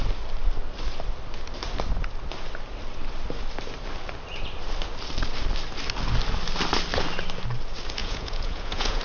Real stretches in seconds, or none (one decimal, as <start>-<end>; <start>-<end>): 0.0-8.0